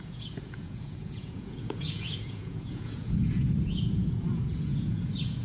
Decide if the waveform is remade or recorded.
remade